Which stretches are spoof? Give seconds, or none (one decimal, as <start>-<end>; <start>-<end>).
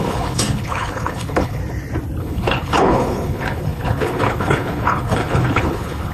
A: 0.0-1.6; 2.2-6.1